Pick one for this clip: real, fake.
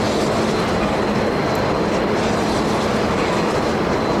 real